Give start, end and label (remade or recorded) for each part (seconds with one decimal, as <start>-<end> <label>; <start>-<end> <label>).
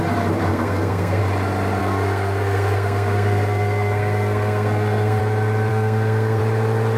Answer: 0.0-0.5 recorded; 0.5-1.2 remade; 1.2-1.8 recorded; 1.8-5.2 remade; 5.2-5.7 recorded; 5.7-6.4 remade; 6.4-7.0 recorded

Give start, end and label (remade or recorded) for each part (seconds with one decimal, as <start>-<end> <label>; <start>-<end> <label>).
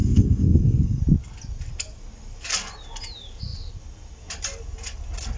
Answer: 0.0-1.0 remade; 1.0-5.4 recorded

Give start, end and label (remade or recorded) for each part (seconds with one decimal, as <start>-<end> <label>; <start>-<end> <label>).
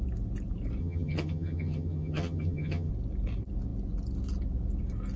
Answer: 0.0-0.8 recorded; 0.8-2.9 remade; 2.9-5.2 recorded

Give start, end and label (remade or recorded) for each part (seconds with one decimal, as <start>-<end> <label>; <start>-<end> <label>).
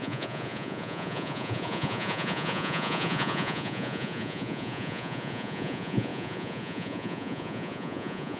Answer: 0.0-8.4 remade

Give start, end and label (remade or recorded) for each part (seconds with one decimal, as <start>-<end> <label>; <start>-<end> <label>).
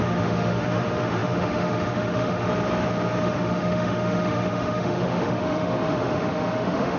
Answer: 0.0-2.5 remade; 2.5-3.2 recorded; 3.2-7.0 remade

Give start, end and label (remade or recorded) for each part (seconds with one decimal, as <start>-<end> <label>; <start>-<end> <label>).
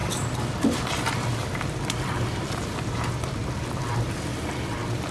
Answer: 0.0-4.3 remade; 4.3-5.1 recorded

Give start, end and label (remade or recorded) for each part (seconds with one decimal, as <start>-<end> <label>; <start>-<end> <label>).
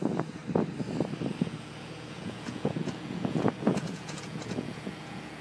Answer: 0.0-0.4 remade; 0.4-1.4 recorded; 1.4-5.4 remade